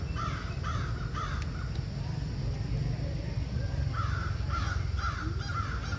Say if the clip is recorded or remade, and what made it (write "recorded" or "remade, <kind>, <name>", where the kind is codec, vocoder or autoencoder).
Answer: recorded